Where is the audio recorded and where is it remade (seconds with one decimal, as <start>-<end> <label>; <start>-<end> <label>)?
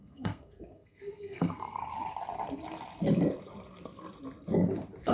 0.0-1.8 remade; 1.8-5.1 recorded